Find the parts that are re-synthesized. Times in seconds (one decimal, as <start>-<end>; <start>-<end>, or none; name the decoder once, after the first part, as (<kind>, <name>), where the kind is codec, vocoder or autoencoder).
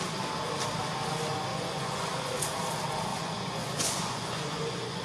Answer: 1.5-2.5 (vocoder, Vocos); 3.1-5.0